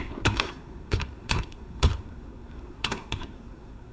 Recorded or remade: remade